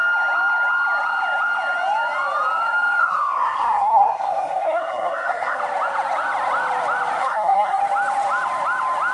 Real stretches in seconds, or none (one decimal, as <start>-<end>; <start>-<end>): 0.0-3.0; 5.6-7.2; 7.8-9.1